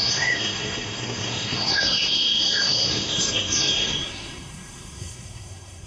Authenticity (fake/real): fake